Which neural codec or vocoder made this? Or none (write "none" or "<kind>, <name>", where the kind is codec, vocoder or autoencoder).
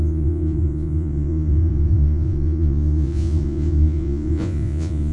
vocoder, Vocos